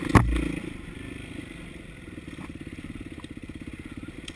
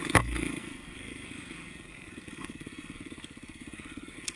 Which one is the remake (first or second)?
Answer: second